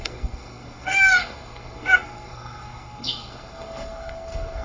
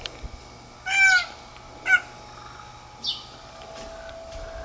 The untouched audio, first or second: second